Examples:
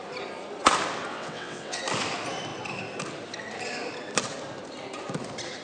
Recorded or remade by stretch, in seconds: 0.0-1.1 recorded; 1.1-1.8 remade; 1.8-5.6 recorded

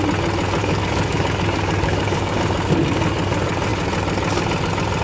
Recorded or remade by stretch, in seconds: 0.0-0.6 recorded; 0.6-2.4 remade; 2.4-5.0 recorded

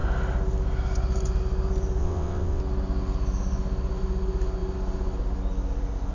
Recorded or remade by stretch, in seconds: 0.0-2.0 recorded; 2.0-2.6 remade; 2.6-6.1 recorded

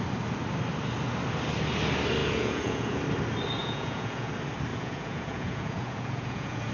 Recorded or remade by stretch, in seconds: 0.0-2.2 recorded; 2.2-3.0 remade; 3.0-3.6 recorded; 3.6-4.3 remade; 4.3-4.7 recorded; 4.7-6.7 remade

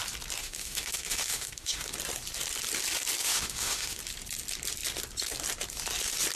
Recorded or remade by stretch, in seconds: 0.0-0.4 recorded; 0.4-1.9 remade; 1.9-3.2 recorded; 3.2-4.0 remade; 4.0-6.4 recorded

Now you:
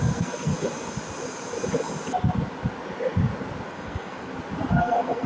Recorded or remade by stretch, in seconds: 0.0-0.5 remade; 0.5-3.7 recorded; 3.7-4.3 remade; 4.3-4.8 recorded; 4.8-5.3 remade